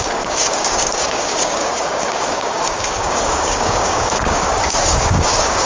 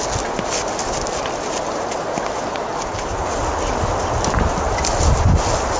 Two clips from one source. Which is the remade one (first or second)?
first